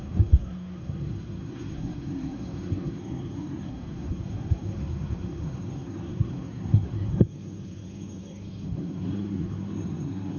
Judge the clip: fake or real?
fake